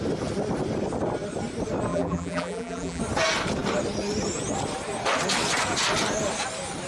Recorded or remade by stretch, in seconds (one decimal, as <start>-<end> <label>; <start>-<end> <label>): 0.0-1.9 recorded; 1.9-3.0 remade; 3.0-6.9 recorded